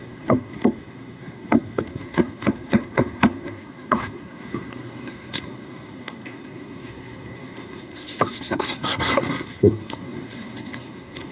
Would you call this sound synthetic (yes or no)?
yes